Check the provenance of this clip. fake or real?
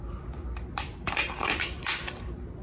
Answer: fake